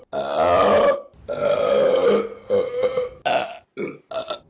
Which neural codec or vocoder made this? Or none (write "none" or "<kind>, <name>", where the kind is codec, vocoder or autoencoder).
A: none